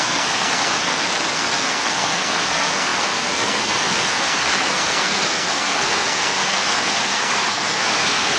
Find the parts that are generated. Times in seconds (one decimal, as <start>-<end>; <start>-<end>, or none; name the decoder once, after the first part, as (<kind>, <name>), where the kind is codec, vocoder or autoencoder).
0.0-8.4 (codec, SNAC)